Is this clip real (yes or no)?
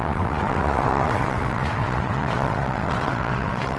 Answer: no